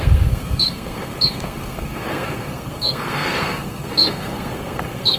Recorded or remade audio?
remade